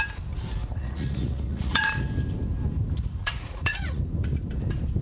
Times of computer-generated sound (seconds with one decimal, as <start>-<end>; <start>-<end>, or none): 0.6-1.9; 3.2-4.0